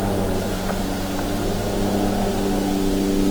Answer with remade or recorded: recorded